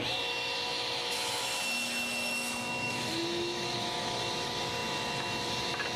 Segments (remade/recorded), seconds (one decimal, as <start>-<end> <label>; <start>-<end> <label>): 0.0-0.7 recorded; 0.7-4.3 remade; 4.3-6.0 recorded